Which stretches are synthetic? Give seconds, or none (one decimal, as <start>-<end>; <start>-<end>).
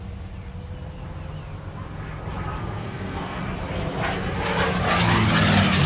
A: 2.6-3.4